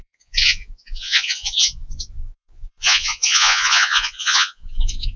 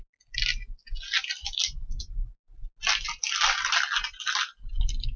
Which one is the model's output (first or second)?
first